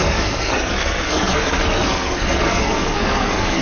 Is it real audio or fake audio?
fake